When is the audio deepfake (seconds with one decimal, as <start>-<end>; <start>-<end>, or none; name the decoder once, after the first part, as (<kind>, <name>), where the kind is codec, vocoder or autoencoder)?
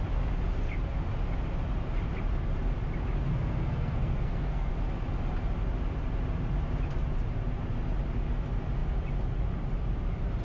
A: 3.3-4.7 (codec, SNAC)